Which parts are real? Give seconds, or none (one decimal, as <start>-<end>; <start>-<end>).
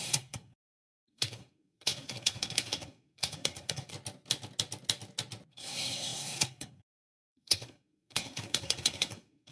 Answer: 3.9-5.5